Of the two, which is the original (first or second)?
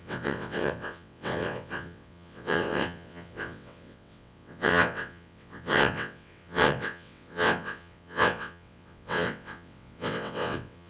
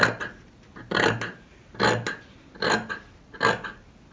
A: second